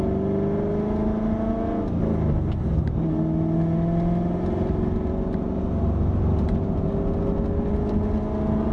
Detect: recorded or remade recorded